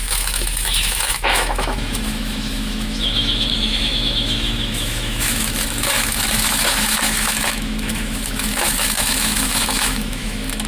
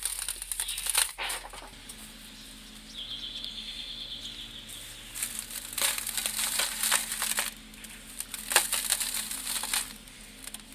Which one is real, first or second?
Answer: second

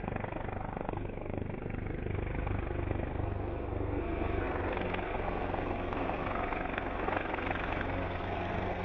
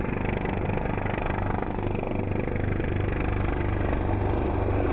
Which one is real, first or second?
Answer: second